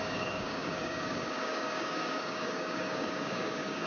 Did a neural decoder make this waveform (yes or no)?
yes